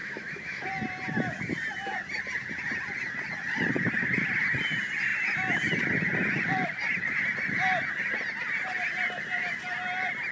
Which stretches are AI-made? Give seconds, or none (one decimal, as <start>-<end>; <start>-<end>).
0.0-0.7